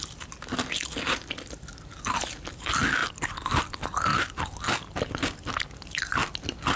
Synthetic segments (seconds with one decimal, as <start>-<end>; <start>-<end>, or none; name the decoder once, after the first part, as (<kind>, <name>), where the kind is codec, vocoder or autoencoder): none